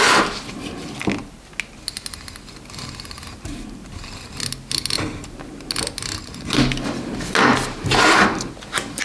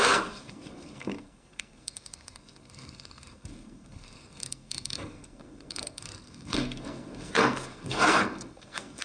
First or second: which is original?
first